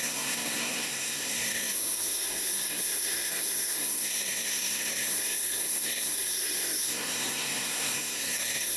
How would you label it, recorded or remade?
remade